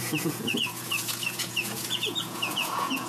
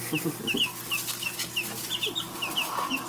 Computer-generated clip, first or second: first